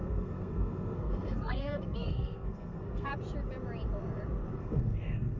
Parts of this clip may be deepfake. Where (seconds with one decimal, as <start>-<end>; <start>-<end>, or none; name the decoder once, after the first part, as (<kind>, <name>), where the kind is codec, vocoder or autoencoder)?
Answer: 0.0-3.1 (codec, SNAC); 4.6-5.4